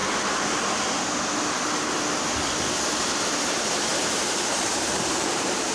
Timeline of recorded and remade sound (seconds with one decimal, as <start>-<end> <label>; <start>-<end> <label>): 0.0-3.4 recorded; 3.4-5.7 remade